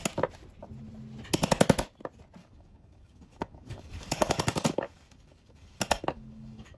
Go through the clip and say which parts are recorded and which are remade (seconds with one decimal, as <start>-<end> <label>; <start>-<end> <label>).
0.0-2.4 recorded; 2.4-6.8 remade

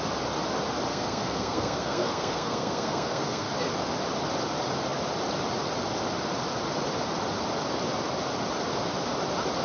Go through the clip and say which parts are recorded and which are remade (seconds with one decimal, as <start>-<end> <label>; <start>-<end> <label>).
0.0-0.9 recorded; 0.9-3.5 remade; 3.5-9.6 recorded

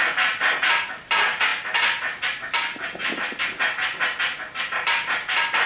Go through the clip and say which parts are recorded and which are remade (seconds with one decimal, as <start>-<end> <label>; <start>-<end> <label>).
0.0-5.7 recorded

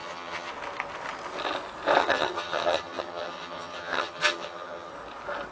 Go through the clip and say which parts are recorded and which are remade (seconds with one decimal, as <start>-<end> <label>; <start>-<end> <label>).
0.0-0.5 remade; 0.5-2.0 recorded; 2.0-4.9 remade; 4.9-5.5 recorded

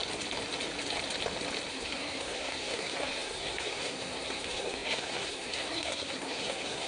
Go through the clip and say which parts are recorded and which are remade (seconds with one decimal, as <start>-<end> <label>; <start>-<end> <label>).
0.0-1.7 recorded; 1.7-6.9 remade

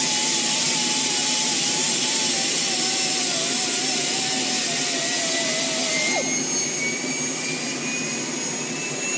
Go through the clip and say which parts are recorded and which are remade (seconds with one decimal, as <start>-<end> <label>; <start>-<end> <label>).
0.0-9.2 recorded